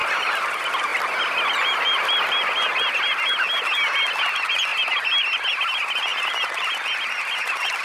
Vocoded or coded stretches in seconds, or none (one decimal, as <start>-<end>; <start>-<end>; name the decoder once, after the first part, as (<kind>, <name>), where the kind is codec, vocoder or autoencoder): none